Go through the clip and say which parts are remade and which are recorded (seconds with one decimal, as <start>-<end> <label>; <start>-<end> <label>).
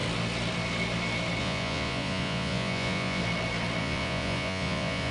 0.0-1.4 recorded; 1.4-3.2 remade; 3.2-3.8 recorded; 3.8-5.1 remade